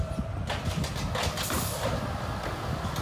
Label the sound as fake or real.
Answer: real